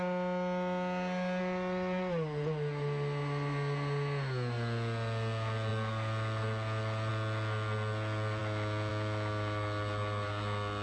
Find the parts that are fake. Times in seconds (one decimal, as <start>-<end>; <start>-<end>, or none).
none